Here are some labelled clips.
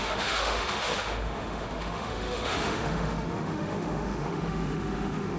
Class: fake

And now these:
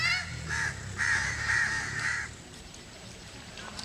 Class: fake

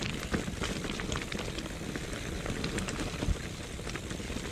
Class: real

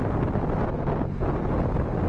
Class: real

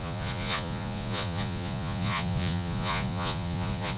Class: fake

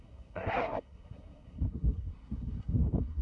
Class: fake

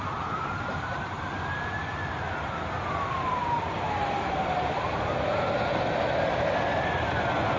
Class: real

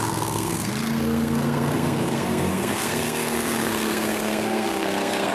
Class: fake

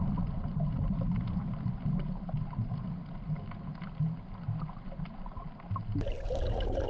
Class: real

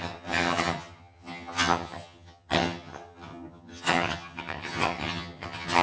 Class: fake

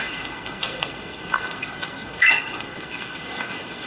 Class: fake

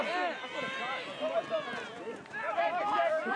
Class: real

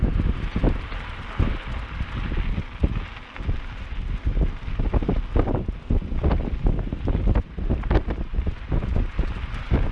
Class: real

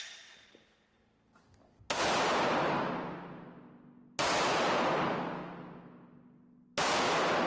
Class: real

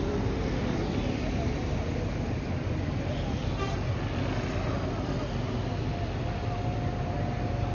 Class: real